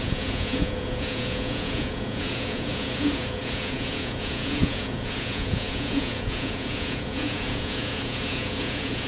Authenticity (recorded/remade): remade